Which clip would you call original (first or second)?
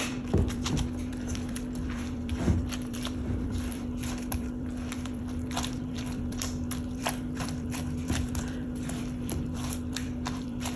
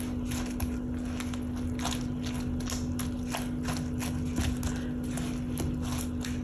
second